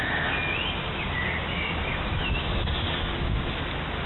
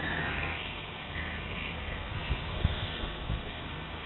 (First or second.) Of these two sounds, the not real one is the second